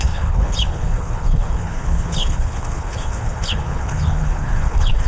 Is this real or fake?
fake